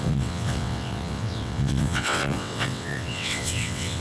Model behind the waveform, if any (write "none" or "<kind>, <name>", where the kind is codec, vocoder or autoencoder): vocoder, WaveNeXt